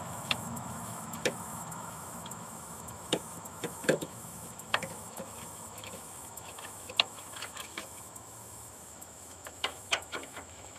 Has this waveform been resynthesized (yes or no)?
yes